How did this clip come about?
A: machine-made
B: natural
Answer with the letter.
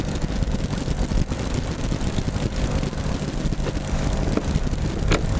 B